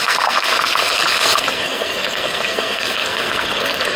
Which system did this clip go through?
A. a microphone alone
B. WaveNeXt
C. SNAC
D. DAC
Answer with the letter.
C